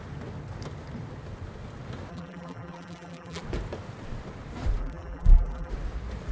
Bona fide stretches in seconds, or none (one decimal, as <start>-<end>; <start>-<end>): 0.0-2.1; 3.4-4.8; 5.7-6.3